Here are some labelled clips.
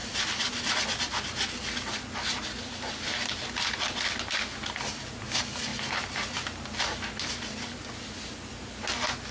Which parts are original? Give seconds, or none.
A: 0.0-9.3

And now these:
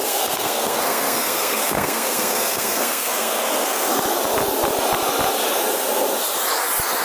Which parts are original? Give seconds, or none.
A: 3.9-7.0

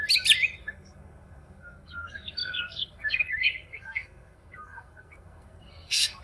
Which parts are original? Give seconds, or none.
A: 0.0-0.6